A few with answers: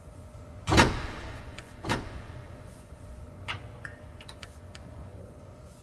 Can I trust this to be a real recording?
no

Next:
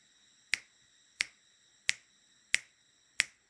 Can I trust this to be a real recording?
yes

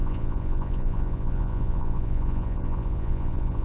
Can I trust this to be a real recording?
no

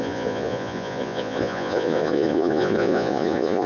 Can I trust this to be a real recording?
no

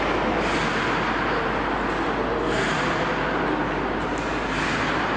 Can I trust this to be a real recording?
yes